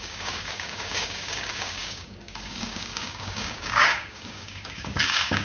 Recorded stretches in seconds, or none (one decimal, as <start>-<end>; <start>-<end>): none